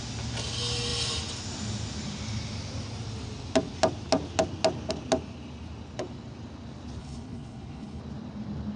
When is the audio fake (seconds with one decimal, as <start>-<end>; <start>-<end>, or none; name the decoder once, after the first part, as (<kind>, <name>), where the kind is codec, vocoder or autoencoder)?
7.0-8.0 (codec, HILCodec)